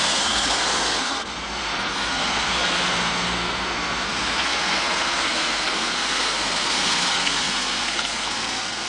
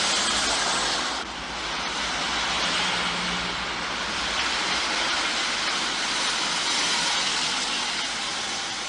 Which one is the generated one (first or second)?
first